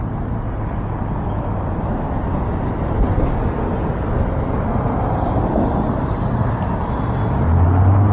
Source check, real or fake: real